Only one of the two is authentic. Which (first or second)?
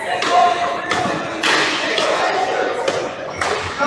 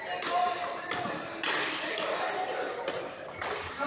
second